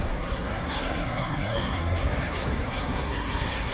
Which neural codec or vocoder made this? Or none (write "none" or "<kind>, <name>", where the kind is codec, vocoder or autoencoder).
codec, SNAC